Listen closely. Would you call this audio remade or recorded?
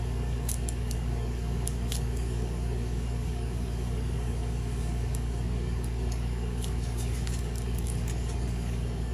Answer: remade